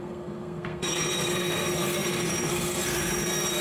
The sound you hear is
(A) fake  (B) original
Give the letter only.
A